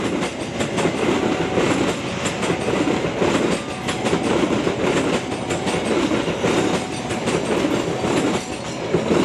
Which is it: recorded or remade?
recorded